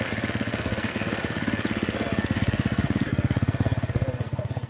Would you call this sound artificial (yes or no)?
yes